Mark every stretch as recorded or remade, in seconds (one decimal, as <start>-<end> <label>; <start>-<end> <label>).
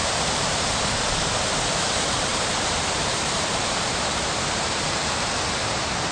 0.0-0.8 remade; 0.8-2.3 recorded; 2.3-5.3 remade; 5.3-6.1 recorded